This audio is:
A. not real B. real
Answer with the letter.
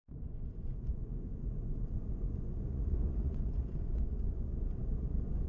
A